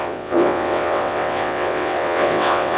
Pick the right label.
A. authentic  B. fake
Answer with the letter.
B